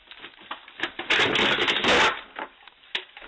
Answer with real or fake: real